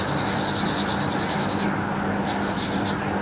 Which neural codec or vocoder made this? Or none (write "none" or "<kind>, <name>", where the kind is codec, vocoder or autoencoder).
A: none